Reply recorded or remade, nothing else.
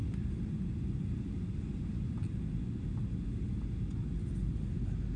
recorded